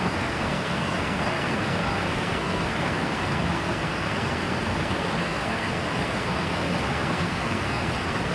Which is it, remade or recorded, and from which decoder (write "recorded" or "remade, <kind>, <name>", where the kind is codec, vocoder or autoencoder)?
remade, codec, SNAC